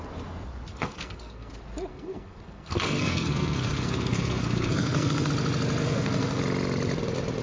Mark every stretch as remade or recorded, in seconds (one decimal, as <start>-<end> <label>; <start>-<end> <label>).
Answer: 0.0-0.7 recorded; 0.7-1.5 remade; 1.5-1.9 recorded; 1.9-5.3 remade; 5.3-5.8 recorded; 5.8-6.4 remade; 6.4-7.4 recorded